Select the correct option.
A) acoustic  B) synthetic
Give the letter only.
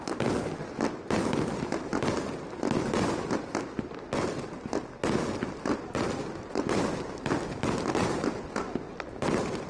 A